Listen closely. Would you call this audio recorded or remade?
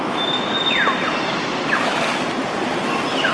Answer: recorded